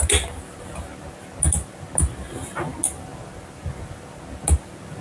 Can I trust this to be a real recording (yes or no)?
yes